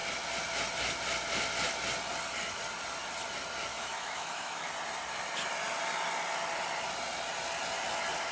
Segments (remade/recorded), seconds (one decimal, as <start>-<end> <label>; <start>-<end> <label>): 0.0-3.7 recorded; 3.7-4.7 remade; 4.7-8.3 recorded